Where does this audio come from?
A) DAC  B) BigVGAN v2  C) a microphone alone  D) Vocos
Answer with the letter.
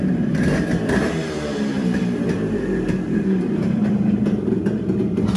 B